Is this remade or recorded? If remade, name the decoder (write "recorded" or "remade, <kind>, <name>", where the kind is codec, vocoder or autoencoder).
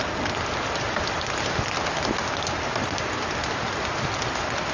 recorded